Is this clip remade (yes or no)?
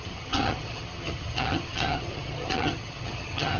yes